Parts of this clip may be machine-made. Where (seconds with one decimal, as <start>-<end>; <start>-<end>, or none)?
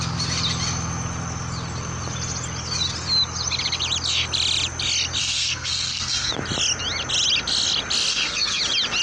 5.2-6.3; 8.1-8.6